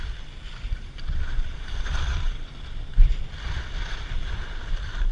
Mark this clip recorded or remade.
remade